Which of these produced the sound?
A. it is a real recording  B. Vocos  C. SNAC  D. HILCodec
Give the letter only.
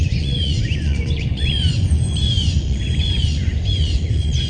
B